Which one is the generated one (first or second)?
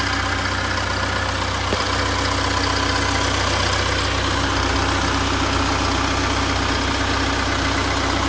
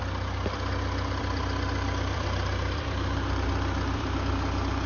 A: second